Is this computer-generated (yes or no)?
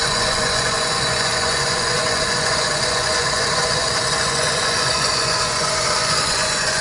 yes